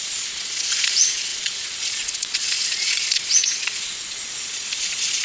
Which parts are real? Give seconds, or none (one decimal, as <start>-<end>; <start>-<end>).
none